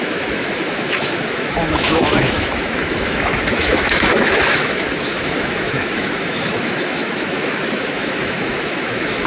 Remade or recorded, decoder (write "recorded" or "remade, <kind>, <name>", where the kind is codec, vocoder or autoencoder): remade, autoencoder, DAC-VAE